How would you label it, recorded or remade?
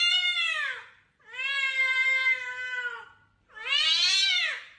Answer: recorded